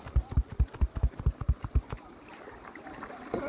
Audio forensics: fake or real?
real